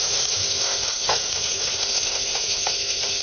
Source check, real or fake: fake